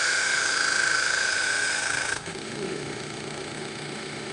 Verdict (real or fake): fake